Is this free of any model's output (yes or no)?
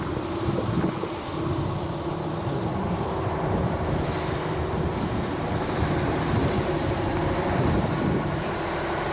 no